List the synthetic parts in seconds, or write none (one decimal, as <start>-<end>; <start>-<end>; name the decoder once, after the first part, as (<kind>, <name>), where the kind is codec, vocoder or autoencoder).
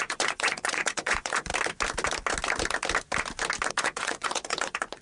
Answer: 0.0-1.5 (vocoder, Vocos); 3.7-5.0